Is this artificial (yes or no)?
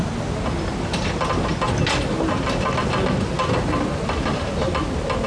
no